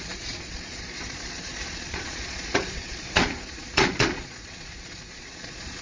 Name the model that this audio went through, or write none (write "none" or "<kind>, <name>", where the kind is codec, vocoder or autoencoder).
vocoder, Vocos